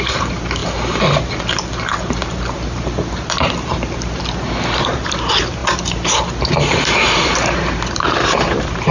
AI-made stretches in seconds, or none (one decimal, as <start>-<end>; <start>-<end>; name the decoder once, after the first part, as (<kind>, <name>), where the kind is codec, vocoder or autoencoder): 0.0-0.6 (vocoder, BigVGAN v2); 4.6-8.9